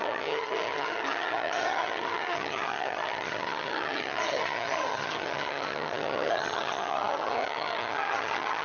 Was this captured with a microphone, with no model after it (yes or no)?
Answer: no